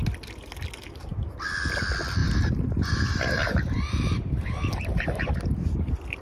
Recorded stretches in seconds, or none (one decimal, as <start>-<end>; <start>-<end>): 0.0-2.2; 5.3-6.2